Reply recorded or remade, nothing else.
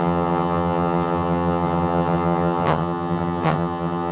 remade